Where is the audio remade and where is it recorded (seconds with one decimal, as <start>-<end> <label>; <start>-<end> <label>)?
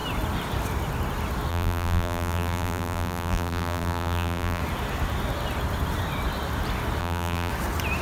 0.0-1.5 recorded; 1.5-4.6 remade; 4.6-7.0 recorded; 7.0-7.5 remade; 7.5-8.0 recorded